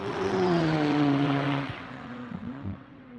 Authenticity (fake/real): fake